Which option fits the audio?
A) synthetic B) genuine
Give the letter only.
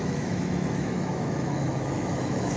A